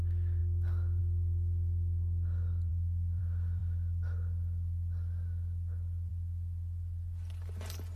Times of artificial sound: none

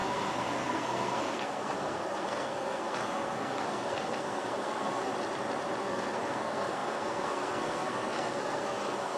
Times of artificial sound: 0.0-5.1 (codec, SNAC); 5.8-9.2

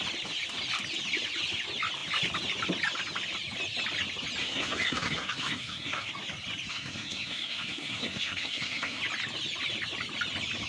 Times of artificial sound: 4.4-6.1 (codec, SNAC); 6.7-9.0